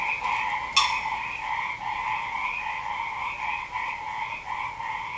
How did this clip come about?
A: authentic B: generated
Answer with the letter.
A